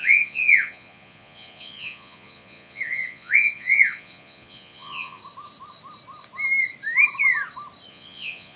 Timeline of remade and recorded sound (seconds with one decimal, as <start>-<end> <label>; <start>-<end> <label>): 0.0-5.2 remade; 5.2-7.9 recorded; 7.9-8.6 remade